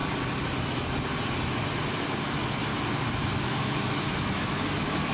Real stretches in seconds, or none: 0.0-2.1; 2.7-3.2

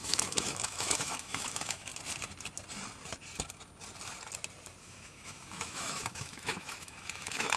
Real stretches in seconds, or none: 1.9-4.8